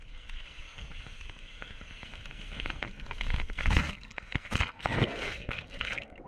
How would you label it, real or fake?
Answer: fake